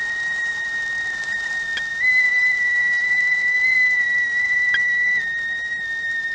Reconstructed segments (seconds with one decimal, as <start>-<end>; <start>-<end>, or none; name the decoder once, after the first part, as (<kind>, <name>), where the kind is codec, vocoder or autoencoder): 3.5-4.1 (vocoder, BigVGAN v2)